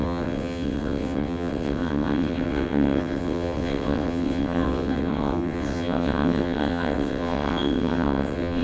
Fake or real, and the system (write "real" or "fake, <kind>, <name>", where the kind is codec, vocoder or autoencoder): fake, vocoder, WaveNeXt